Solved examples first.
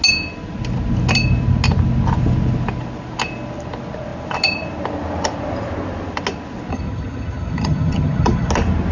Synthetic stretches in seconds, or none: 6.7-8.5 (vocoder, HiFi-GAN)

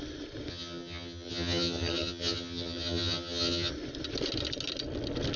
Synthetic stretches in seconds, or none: 0.5-3.7 (vocoder, HiFi-GAN)